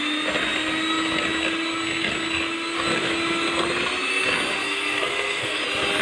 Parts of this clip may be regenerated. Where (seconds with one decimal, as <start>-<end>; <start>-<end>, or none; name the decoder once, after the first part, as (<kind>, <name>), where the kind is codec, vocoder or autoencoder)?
4.6-5.6 (codec, SNAC)